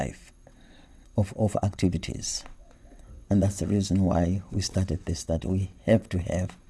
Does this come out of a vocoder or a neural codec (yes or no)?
yes